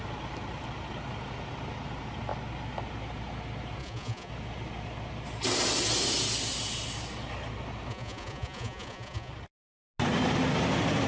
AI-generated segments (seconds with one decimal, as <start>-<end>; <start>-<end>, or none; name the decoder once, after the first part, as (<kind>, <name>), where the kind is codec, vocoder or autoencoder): 3.8-4.3 (vocoder, Vocos); 7.9-9.3